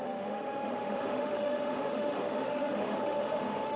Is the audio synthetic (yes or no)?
yes